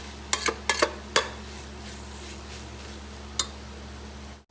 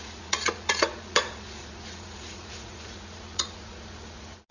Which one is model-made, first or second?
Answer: second